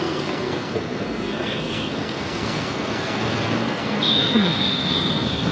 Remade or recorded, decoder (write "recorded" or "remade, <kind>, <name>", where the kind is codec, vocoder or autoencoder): remade, codec, SNAC